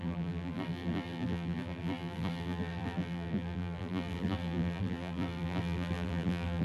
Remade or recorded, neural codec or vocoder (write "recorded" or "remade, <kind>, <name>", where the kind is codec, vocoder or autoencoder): remade, vocoder, BigVGAN v2